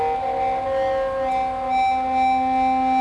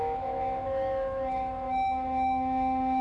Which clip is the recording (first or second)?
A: first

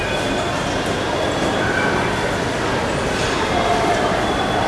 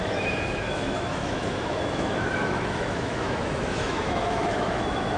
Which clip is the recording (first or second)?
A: first